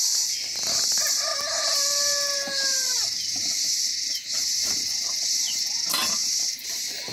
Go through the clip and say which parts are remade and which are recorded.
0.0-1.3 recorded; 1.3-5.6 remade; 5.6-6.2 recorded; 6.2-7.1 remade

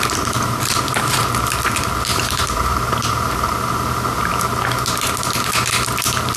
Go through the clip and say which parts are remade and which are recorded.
0.0-2.1 recorded; 2.1-4.3 remade; 4.3-6.4 recorded

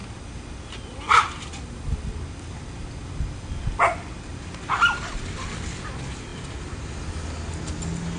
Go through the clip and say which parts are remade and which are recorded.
0.0-8.2 recorded

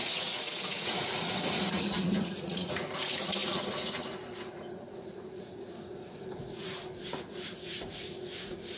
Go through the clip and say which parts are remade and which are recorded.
0.0-8.8 remade

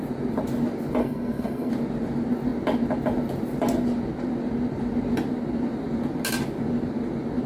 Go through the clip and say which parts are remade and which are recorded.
0.0-1.0 recorded; 1.0-1.7 remade; 1.7-7.5 recorded